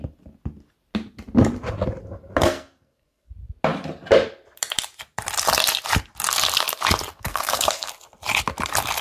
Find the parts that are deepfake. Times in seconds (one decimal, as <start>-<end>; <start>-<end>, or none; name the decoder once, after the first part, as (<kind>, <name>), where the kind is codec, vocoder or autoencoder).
2.4-3.3 (codec, SNAC); 7.1-7.9